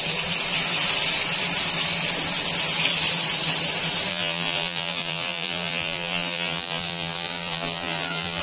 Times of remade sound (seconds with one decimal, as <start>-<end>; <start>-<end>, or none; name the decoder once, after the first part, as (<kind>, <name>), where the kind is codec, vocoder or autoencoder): 4.1-8.4 (vocoder, BigVGAN v2)